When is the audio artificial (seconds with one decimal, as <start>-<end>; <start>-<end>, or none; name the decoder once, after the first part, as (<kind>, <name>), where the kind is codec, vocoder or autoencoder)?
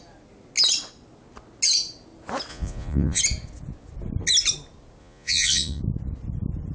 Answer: 2.5-3.2 (vocoder, Vocos); 5.0-5.8